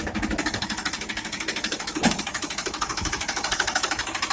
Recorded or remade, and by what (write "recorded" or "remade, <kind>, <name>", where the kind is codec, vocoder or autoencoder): remade, autoencoder, DAC-VAE